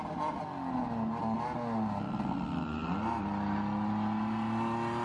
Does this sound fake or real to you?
real